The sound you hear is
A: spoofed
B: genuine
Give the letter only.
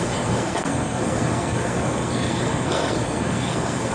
A